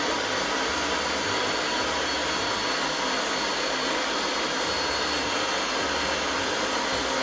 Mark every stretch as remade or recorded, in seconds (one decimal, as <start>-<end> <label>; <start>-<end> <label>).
0.0-7.2 recorded

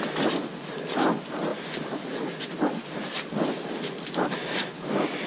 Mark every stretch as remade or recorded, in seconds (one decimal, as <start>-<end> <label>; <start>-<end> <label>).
0.0-5.3 recorded

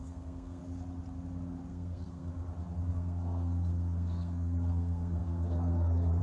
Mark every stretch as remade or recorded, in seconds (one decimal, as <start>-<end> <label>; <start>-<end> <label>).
0.0-0.6 remade; 0.6-1.7 recorded; 1.7-2.3 remade; 2.3-2.9 recorded; 2.9-6.2 remade

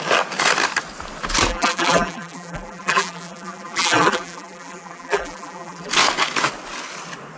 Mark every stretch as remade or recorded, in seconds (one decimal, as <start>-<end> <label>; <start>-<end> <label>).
0.0-1.5 recorded; 1.5-5.9 remade; 5.9-7.4 recorded

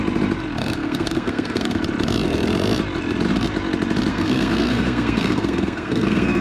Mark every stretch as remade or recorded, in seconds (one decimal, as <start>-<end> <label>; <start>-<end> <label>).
0.0-0.6 recorded; 0.6-1.8 remade; 1.8-4.1 recorded; 4.1-6.4 remade

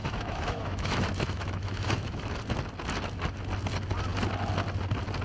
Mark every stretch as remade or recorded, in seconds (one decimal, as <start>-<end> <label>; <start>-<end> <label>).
0.0-2.4 remade; 2.4-5.2 recorded